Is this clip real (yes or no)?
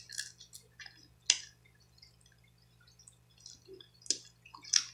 yes